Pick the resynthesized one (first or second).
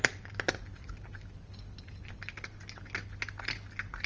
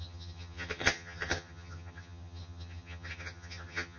second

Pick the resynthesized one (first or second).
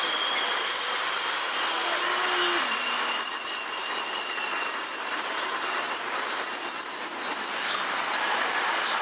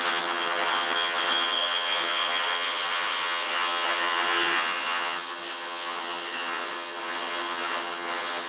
second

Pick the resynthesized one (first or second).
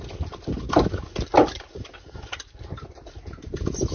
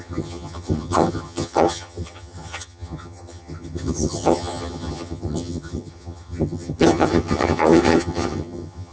second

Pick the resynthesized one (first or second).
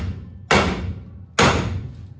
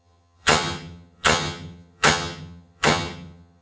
second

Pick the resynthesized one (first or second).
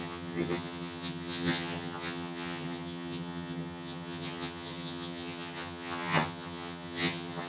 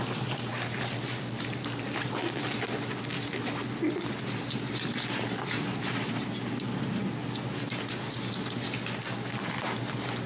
first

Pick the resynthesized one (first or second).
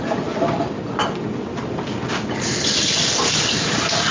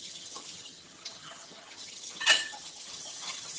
second